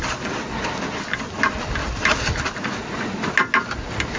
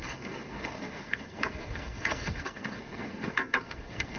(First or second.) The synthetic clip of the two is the second